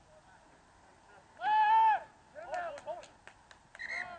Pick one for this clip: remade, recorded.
recorded